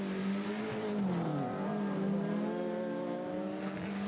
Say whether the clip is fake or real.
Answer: real